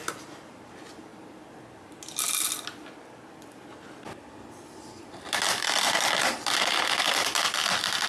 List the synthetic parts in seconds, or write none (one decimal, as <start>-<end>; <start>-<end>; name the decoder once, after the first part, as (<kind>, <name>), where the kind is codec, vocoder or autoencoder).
none